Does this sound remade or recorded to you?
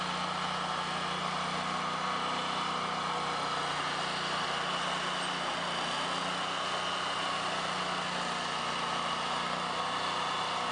recorded